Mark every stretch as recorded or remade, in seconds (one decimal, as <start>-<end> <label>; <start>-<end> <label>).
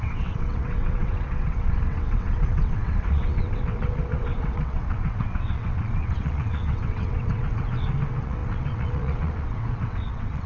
0.0-10.5 remade